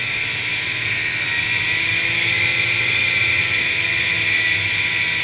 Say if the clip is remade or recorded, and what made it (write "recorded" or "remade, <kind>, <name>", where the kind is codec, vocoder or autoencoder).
recorded